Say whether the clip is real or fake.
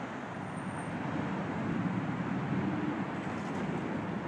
real